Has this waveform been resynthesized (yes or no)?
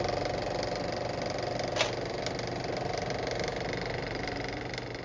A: no